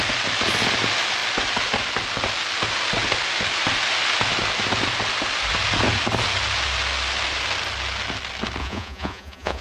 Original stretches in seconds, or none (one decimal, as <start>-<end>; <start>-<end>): 0.0-8.6